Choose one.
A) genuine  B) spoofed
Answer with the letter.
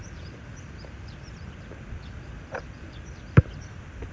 B